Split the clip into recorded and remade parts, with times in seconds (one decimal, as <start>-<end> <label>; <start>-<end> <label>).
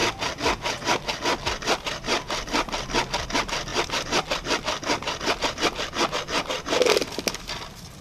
0.0-8.0 recorded